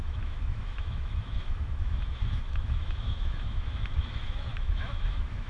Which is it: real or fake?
fake